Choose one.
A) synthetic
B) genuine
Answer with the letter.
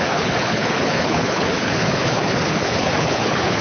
A